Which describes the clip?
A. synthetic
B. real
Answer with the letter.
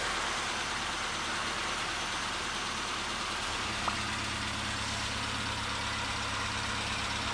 B